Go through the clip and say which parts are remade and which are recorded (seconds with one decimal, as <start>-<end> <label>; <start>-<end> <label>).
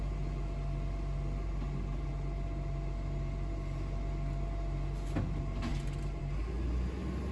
0.0-7.3 recorded